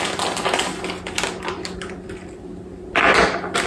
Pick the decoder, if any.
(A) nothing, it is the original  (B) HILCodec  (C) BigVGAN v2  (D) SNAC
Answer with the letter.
A